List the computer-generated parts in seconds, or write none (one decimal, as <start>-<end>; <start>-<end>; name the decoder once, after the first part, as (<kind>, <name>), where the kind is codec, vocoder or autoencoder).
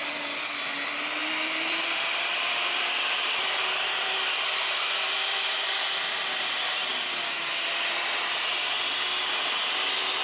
1.2-5.6 (vocoder, BigVGAN v2)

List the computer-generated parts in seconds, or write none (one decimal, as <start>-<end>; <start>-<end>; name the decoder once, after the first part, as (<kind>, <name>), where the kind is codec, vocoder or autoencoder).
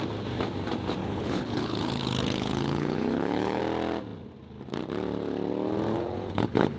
1.0-3.6 (codec, HILCodec); 5.9-6.8